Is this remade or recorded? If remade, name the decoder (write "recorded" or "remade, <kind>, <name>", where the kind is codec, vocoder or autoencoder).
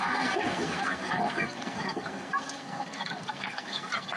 remade, codec, SNAC